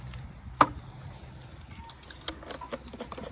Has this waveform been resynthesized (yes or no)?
no